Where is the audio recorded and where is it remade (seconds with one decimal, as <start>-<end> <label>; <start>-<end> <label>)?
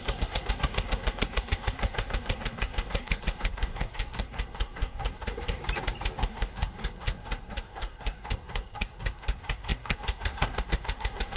0.0-5.6 remade; 5.6-6.2 recorded; 6.2-11.4 remade